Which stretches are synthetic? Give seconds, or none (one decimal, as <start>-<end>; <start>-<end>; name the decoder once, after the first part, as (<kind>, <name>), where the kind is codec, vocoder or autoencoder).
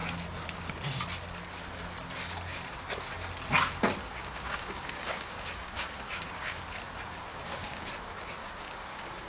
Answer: 4.0-6.6 (codec, DAC); 7.3-7.9; 8.4-9.3